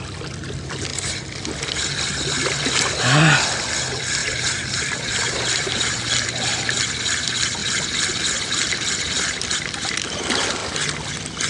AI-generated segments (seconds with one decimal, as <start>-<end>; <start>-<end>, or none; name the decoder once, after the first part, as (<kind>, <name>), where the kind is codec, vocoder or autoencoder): 4.2-6.1 (vocoder, BigVGAN v2)